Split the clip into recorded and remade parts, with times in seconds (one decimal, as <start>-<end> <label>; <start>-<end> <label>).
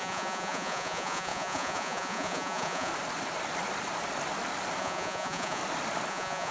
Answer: 0.0-2.9 remade; 2.9-4.8 recorded; 4.8-5.6 remade; 5.6-6.1 recorded; 6.1-6.5 remade